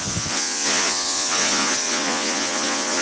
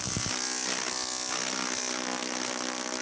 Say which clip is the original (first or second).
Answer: second